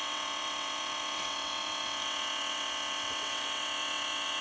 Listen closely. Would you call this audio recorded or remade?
remade